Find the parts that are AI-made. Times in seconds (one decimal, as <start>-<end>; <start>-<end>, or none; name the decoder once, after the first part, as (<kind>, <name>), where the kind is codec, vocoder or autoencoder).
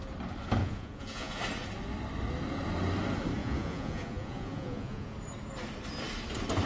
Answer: 0.6-1.4 (vocoder, Vocos); 3.4-5.1